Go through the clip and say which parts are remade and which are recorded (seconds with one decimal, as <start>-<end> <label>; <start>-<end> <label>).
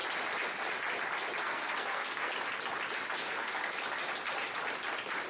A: 0.0-1.4 recorded; 1.4-2.3 remade; 2.3-3.2 recorded; 3.2-3.7 remade; 3.7-5.3 recorded